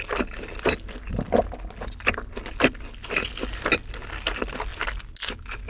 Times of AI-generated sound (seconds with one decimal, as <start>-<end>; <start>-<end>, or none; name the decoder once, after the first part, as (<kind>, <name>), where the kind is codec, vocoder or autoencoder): none